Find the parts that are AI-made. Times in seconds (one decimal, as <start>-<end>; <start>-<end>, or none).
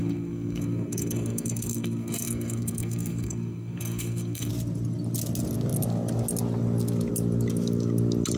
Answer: 0.0-4.5